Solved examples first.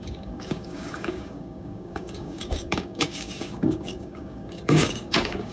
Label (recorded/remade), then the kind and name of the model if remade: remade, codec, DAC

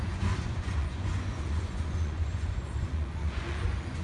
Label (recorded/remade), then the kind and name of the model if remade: remade, vocoder, Vocos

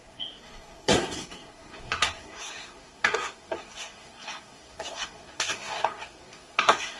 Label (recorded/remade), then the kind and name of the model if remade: remade, codec, SNAC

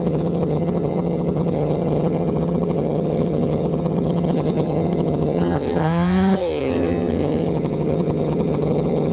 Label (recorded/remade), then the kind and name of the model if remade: remade, vocoder, HiFi-GAN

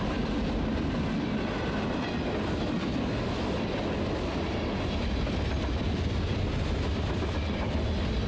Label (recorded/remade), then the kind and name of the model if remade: recorded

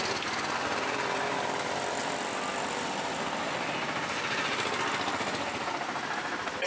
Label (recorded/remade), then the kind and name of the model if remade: recorded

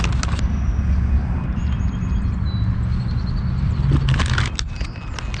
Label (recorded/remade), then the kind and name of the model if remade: recorded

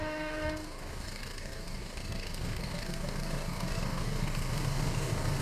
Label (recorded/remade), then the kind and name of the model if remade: remade, codec, DAC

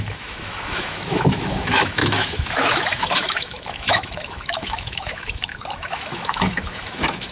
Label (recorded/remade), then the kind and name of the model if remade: remade, autoencoder, DAC-VAE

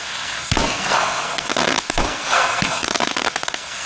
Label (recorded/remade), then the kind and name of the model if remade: remade, codec, SNAC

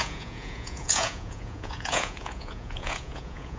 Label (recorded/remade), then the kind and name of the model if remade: remade, vocoder, Vocos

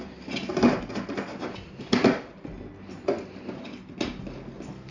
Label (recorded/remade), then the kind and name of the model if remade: recorded